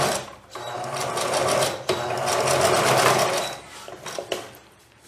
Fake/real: real